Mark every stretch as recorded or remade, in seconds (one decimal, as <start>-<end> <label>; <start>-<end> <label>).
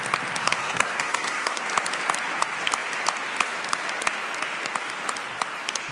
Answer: 0.0-0.4 recorded; 0.4-1.6 remade; 1.6-5.9 recorded